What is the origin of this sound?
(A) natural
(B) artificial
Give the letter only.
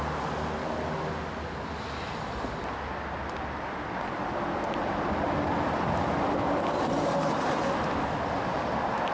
A